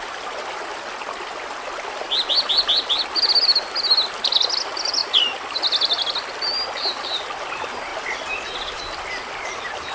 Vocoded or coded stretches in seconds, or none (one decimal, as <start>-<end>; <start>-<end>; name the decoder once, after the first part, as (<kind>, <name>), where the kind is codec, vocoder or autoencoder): none